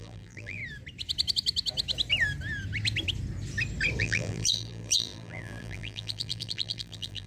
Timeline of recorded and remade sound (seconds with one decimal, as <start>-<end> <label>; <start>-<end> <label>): 0.0-0.6 remade; 0.6-4.0 recorded; 4.0-7.3 remade